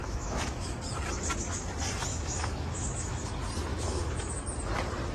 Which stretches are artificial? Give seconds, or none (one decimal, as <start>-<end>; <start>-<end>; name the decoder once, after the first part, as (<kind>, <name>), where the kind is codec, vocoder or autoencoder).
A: 0.0-0.8 (autoencoder, DAC-VAE); 2.1-3.3; 3.7-4.4